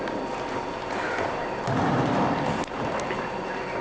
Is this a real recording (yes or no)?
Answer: yes